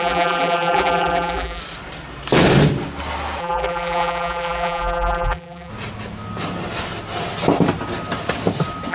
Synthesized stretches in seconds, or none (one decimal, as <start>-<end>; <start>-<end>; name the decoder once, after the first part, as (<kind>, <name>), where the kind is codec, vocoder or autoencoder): 0.0-1.6 (vocoder, BigVGAN v2); 3.4-5.7